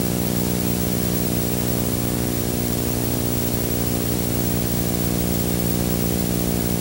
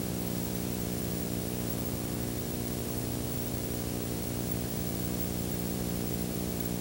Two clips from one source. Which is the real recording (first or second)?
first